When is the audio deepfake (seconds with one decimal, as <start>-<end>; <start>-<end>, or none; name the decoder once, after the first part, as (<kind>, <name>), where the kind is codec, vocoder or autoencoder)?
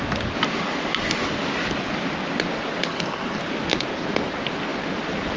2.9-3.4 (codec, DAC)